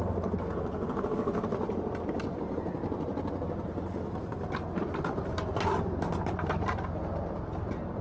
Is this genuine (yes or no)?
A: yes